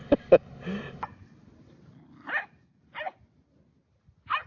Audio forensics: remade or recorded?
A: recorded